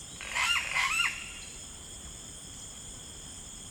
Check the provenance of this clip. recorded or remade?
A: remade